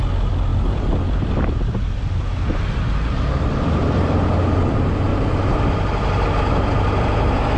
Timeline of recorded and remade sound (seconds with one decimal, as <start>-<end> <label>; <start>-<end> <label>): 0.0-0.5 recorded; 0.5-4.3 remade; 4.3-7.6 recorded